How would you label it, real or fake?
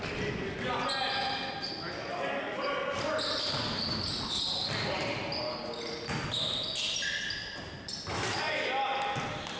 real